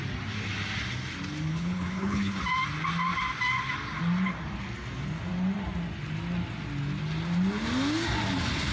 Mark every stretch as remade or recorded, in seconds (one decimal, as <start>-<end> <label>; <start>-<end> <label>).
0.0-1.5 recorded; 1.5-2.4 remade; 2.4-8.7 recorded